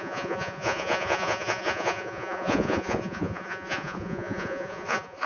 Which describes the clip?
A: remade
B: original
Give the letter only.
A